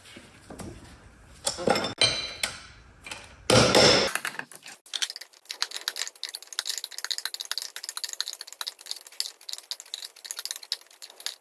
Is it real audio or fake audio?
real